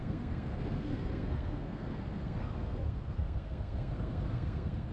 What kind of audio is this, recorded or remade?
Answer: remade